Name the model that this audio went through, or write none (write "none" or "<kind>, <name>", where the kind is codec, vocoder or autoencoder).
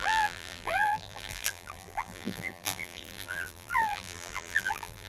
vocoder, BigVGAN v2